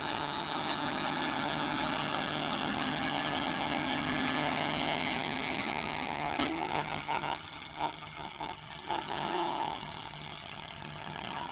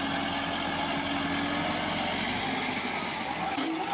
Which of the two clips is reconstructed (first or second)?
first